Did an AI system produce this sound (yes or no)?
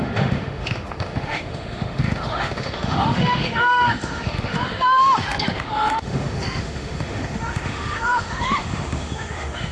yes